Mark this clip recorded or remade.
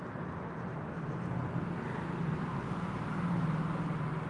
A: recorded